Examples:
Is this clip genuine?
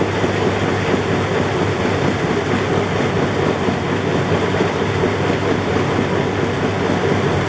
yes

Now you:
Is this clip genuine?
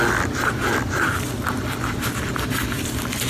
no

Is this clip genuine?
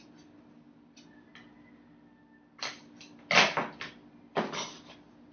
yes